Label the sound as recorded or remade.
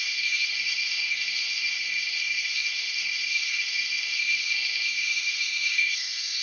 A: remade